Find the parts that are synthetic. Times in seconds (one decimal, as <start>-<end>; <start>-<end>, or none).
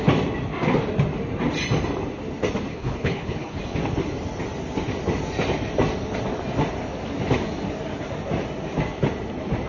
2.7-3.6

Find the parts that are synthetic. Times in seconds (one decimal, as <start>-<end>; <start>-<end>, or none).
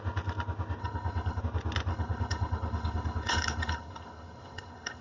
0.8-1.4; 1.9-5.0